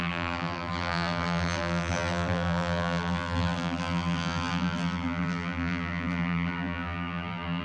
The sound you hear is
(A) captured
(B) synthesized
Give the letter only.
B